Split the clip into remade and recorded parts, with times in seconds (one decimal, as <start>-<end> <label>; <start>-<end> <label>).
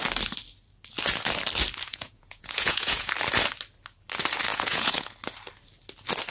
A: 0.0-1.9 recorded; 1.9-3.1 remade; 3.1-4.5 recorded; 4.5-5.1 remade; 5.1-6.3 recorded